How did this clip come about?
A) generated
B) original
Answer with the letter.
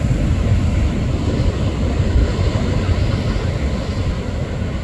B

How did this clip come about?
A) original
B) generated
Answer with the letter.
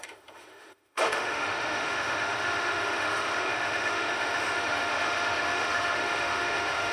B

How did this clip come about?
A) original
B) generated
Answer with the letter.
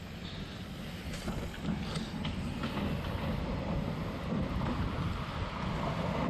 A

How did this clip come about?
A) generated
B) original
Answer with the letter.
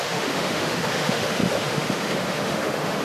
A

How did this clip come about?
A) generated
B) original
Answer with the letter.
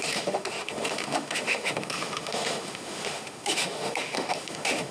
A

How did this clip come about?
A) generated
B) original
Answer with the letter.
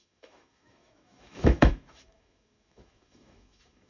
A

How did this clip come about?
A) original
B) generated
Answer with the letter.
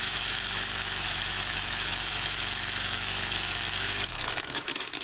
B